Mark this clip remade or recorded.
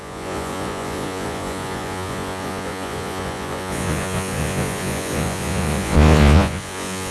remade